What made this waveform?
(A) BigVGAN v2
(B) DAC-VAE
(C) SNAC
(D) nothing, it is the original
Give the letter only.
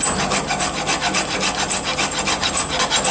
D